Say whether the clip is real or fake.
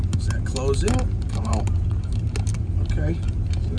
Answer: real